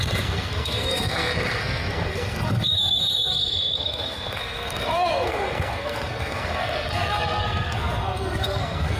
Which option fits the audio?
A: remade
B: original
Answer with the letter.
A